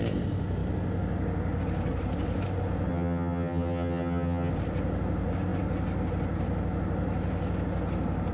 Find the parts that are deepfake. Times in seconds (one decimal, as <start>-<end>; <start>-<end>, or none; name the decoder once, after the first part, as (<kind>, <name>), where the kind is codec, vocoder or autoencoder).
2.9-4.5 (vocoder, HiFi-GAN)